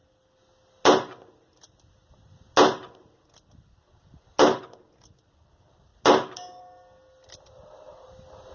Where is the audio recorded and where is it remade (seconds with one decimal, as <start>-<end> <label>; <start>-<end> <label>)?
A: 0.0-8.5 recorded